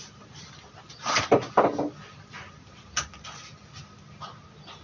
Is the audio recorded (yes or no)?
yes